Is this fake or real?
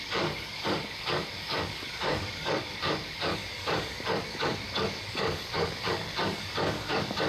fake